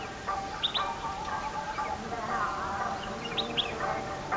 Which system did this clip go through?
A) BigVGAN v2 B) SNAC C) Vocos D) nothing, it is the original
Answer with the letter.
D